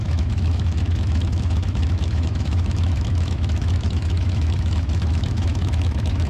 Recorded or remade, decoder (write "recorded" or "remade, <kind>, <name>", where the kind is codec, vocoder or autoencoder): remade, autoencoder, DAC-VAE